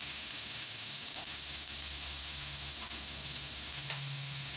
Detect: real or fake fake